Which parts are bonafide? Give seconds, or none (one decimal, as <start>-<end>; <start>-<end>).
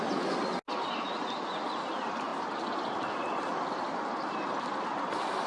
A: 0.0-5.5